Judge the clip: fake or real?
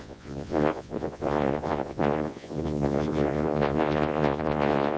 fake